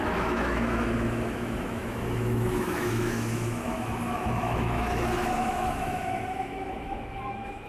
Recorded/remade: remade